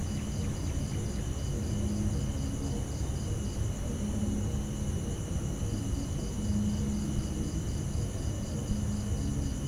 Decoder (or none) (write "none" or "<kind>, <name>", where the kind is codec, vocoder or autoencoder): none